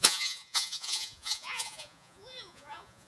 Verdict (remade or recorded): remade